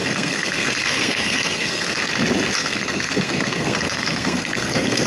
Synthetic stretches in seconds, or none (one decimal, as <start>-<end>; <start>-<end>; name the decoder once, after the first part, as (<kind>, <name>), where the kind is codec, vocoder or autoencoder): 0.0-2.1 (codec, SNAC); 2.6-5.1